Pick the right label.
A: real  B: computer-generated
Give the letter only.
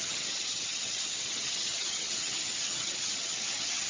B